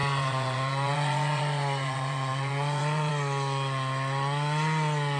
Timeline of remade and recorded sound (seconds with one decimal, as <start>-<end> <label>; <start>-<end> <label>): 0.0-3.1 remade; 3.1-5.2 recorded